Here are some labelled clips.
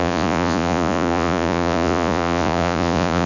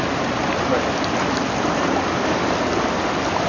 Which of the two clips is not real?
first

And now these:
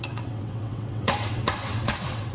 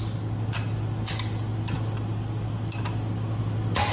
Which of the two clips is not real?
first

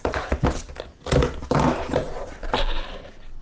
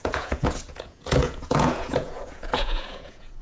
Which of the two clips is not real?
second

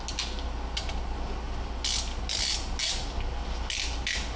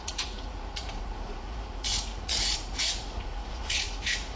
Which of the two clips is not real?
second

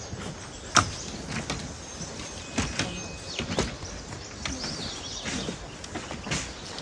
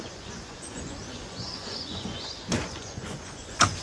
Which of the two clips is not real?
second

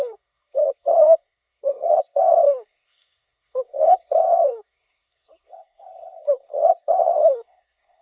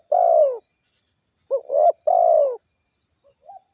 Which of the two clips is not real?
first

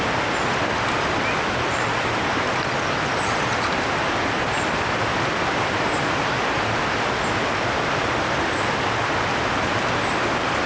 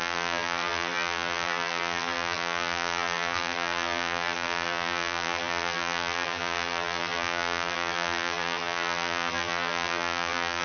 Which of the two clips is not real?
second